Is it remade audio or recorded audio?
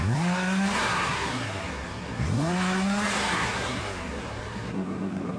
remade